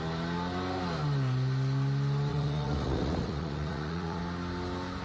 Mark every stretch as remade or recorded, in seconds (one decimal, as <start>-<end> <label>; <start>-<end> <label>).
0.0-2.3 recorded; 2.3-4.2 remade; 4.2-5.0 recorded